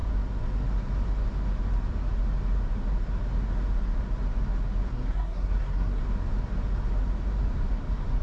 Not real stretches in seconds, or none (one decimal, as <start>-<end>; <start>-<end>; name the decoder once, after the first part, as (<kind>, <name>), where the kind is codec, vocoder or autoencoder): 4.9-6.0 (codec, SNAC)